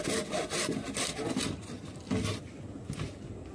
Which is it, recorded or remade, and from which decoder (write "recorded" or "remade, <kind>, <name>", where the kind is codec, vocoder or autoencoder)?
recorded